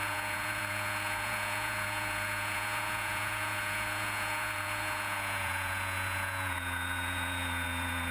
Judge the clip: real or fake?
fake